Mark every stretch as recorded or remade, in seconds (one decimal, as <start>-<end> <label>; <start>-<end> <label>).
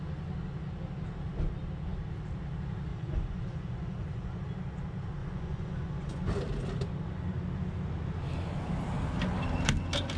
0.0-2.9 recorded; 2.9-4.4 remade; 4.4-5.2 recorded; 5.2-6.3 remade; 6.3-10.2 recorded